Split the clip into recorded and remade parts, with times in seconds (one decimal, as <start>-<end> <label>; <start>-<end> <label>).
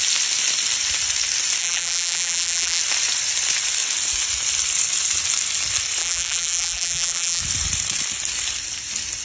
0.0-1.6 recorded; 1.6-2.8 remade; 2.8-6.0 recorded; 6.0-7.4 remade; 7.4-9.2 recorded